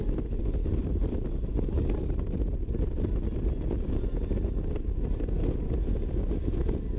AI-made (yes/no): no